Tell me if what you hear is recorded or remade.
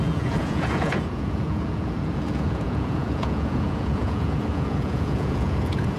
remade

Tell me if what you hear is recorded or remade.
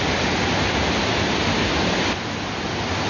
recorded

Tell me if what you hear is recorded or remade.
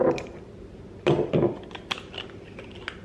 recorded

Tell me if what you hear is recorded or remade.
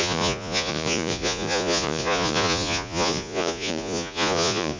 remade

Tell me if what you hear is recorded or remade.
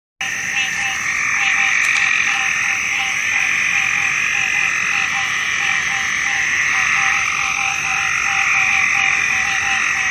recorded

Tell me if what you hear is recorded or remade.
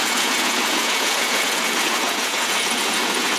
remade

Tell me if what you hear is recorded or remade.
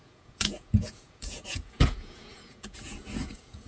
remade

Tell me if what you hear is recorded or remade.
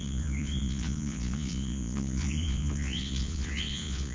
remade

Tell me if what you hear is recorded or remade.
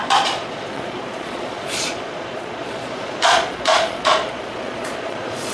remade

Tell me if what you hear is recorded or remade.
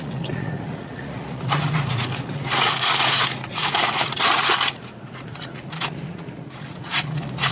remade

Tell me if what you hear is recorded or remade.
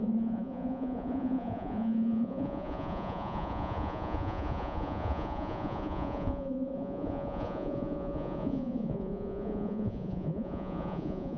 remade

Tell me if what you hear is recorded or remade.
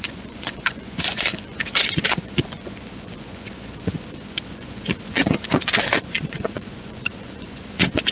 remade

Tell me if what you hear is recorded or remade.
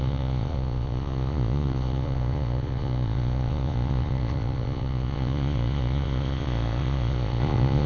remade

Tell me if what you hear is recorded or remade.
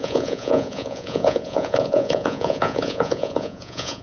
remade